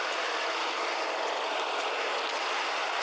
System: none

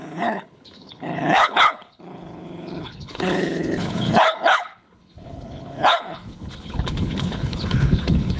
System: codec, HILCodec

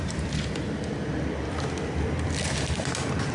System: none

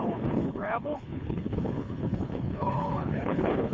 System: codec, HILCodec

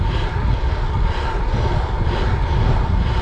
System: none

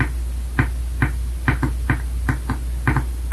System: none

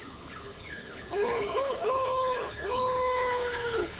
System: codec, HILCodec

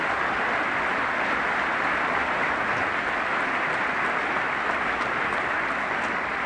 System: none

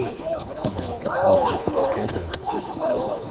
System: codec, HILCodec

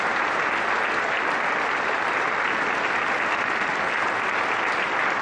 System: none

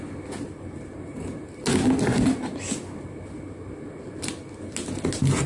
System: none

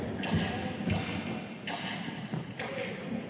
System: none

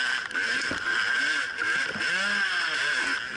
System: none